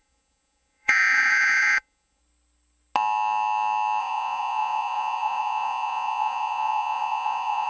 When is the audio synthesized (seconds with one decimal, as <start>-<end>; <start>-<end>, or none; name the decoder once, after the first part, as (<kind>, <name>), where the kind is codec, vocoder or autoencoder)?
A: 0.0-2.2 (vocoder, Vocos); 4.0-7.7